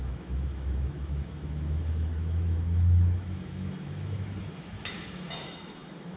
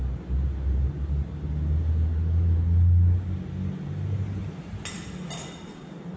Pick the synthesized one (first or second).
first